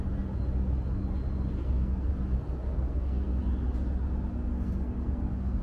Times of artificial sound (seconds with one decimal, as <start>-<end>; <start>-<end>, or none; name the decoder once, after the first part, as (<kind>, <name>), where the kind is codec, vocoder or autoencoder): 1.6-2.1 (codec, SNAC); 2.6-3.4; 4.5-5.6